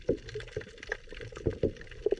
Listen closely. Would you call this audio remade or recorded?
recorded